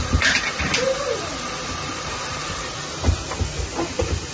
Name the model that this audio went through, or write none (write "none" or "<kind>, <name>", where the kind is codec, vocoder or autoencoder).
none